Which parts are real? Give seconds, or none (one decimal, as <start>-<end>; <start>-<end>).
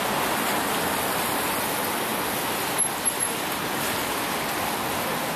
0.0-5.4